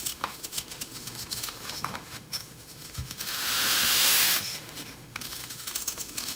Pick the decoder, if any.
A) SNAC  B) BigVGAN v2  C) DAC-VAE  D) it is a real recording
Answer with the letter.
C